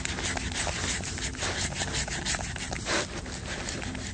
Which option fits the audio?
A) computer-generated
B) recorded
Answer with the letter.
B